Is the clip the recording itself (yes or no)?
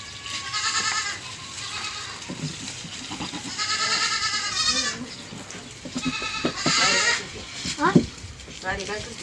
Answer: yes